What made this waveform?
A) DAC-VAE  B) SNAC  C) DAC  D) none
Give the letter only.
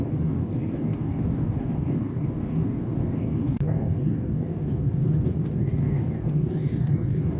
C